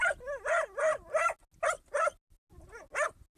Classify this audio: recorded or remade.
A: recorded